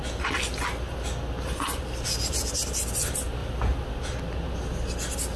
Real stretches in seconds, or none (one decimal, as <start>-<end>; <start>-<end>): 0.0-5.4